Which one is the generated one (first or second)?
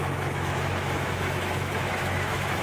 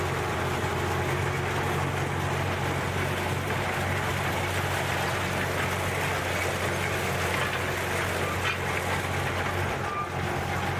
first